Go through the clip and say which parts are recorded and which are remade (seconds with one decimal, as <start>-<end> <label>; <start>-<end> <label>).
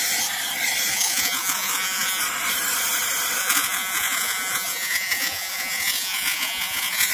0.0-0.9 recorded; 0.9-2.2 remade; 2.2-3.4 recorded; 3.4-7.1 remade